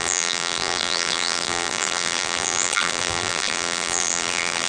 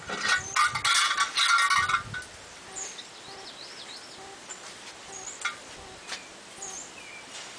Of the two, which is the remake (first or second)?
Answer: first